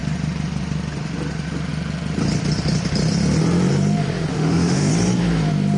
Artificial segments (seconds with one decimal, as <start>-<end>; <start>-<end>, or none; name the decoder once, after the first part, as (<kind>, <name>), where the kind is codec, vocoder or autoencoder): 4.3-4.9 (autoencoder, DAC-VAE)